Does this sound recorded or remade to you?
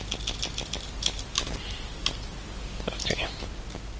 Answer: recorded